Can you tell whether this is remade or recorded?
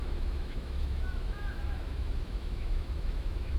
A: remade